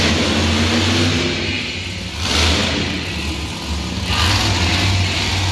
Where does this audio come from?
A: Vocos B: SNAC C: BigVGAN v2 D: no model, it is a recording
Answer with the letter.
D